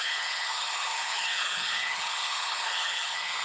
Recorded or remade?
remade